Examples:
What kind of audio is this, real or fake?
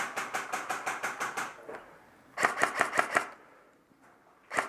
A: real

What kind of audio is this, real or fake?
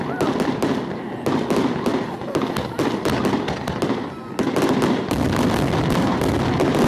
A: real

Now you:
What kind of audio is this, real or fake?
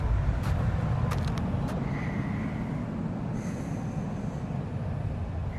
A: real